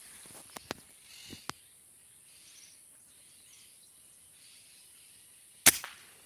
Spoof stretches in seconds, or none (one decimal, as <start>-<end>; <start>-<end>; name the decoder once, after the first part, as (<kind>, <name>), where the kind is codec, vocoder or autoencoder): none